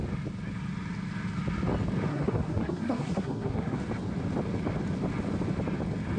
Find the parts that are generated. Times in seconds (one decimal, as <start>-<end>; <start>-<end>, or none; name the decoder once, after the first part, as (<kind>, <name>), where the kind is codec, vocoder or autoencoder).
2.1-3.8 (codec, SNAC)